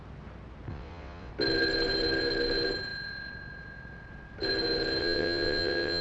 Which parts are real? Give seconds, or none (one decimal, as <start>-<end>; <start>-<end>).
0.0-0.7; 1.3-5.0